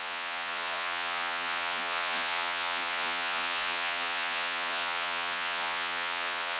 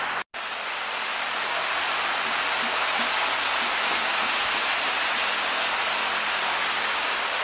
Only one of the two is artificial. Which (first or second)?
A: first